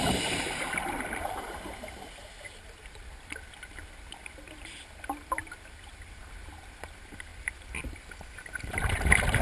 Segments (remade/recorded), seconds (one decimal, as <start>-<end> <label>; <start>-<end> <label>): 0.0-9.4 remade